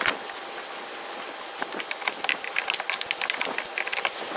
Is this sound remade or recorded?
recorded